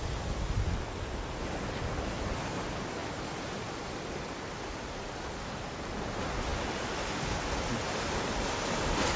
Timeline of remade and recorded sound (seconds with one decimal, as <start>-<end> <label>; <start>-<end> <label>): 0.0-9.2 recorded